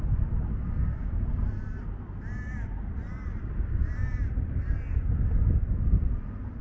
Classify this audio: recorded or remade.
recorded